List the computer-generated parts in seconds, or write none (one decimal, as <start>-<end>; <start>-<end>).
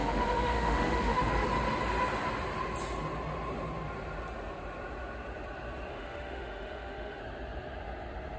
0.0-1.3; 5.9-7.2